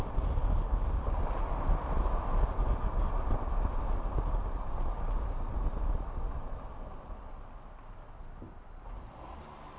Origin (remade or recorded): recorded